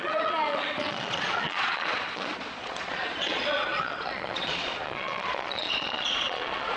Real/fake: fake